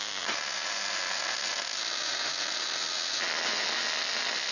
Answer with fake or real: real